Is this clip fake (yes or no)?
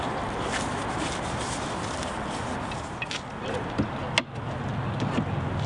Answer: no